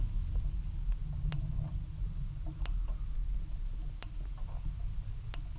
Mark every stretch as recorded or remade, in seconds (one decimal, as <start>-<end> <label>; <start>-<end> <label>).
0.0-5.6 recorded